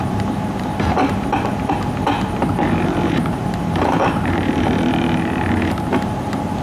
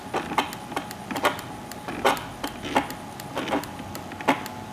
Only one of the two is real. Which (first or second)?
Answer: second